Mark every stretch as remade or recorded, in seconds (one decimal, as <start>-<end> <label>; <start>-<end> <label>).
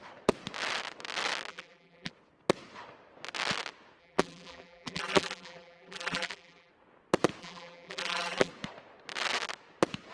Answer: 0.0-1.5 recorded; 1.5-2.1 remade; 2.1-4.0 recorded; 4.0-6.7 remade; 6.7-7.4 recorded; 7.4-8.5 remade; 8.5-10.1 recorded